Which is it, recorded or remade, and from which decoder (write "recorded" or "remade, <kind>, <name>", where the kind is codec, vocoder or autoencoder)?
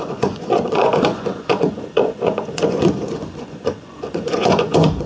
remade, vocoder, Vocos